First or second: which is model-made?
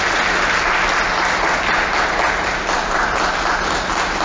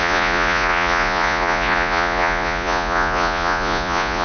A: second